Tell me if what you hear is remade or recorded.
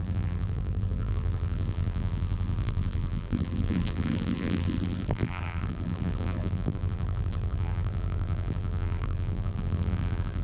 remade